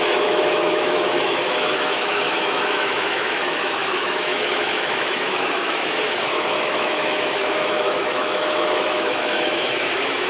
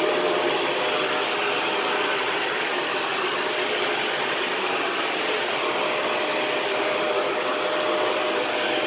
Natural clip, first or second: second